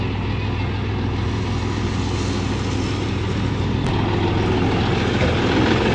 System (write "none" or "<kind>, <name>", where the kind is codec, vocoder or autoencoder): none